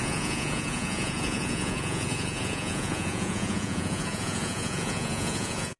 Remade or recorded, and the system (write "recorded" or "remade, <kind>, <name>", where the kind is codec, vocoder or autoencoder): remade, vocoder, Vocos